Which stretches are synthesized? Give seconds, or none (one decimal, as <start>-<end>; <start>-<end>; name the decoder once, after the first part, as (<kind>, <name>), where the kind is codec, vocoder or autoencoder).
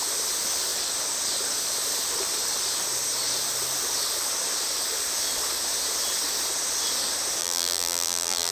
7.4-8.5 (vocoder, BigVGAN v2)